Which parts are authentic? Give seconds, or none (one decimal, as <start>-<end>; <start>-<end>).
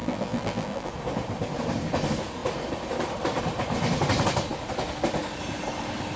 0.9-6.2